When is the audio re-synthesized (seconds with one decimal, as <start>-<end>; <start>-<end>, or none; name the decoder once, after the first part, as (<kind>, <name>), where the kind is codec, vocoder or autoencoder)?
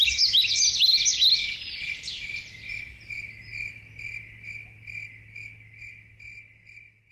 none